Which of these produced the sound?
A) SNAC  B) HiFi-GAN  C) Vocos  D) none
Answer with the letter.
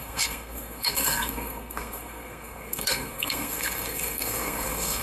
A